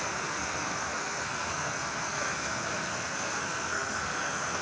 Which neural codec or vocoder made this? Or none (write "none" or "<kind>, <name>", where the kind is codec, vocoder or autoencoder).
codec, SNAC